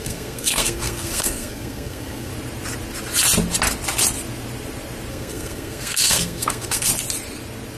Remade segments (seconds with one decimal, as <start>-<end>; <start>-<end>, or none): 0.0-2.3; 5.1-6.9